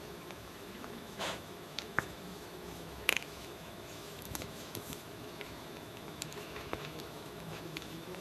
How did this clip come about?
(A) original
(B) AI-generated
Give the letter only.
B